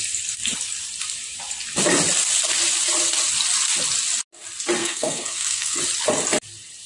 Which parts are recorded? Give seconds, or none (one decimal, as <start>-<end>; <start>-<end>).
0.0-4.8; 5.8-6.9